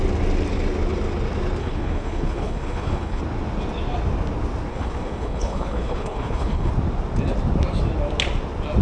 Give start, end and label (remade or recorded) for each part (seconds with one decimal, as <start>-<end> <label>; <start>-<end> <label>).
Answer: 0.0-1.6 recorded; 1.6-3.2 remade; 3.2-4.7 recorded; 4.7-6.7 remade; 6.7-8.8 recorded